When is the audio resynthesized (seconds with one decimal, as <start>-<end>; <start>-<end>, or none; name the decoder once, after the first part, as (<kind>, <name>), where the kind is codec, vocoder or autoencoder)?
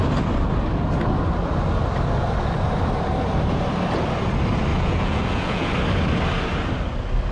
4.7-5.7 (vocoder, Vocos)